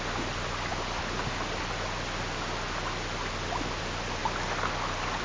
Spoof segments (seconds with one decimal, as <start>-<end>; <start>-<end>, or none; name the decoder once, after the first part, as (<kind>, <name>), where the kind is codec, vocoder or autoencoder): none